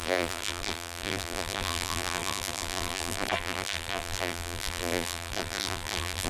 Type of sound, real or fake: fake